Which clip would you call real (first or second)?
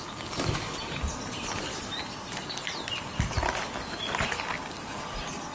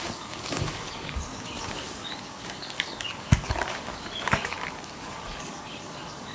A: first